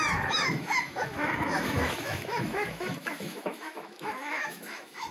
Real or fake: fake